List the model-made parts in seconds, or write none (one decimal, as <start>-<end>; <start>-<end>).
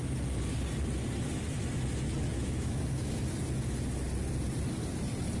2.3-3.1